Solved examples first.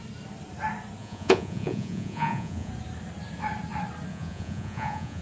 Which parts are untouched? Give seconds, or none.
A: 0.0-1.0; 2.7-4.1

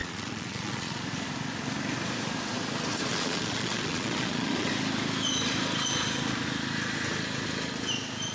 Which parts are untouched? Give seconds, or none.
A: 1.0-3.1; 4.7-8.3

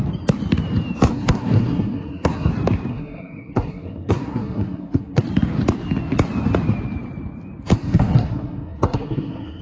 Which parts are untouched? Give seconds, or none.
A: 0.0-1.1; 2.5-2.9; 5.2-7.7